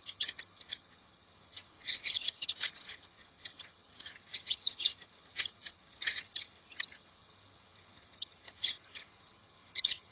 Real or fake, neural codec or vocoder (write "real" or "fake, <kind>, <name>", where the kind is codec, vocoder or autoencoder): fake, vocoder, HiFi-GAN